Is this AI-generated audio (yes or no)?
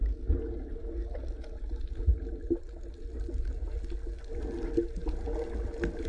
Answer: no